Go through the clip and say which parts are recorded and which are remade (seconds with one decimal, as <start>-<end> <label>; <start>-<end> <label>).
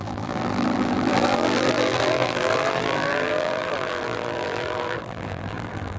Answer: 0.0-6.0 remade